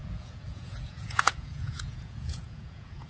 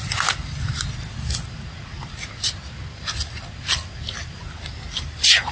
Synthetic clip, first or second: first